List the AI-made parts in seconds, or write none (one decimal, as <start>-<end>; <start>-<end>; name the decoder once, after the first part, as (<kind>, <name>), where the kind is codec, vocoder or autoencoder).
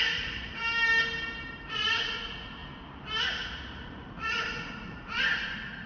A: 0.0-0.6 (vocoder, Vocos); 1.7-2.6; 3.2-5.9